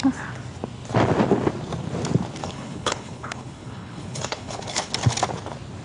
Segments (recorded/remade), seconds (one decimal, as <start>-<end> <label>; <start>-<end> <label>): 0.0-2.4 recorded; 2.4-4.9 remade; 4.9-5.8 recorded